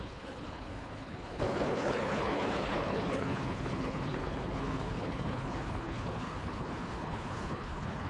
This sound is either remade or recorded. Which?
remade